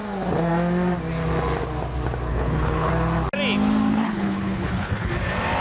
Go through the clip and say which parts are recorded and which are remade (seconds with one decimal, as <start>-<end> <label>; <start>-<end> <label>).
0.0-2.3 recorded; 2.3-2.9 remade; 2.9-3.9 recorded; 3.9-5.1 remade; 5.1-5.6 recorded